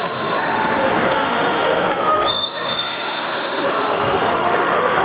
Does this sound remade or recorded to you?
remade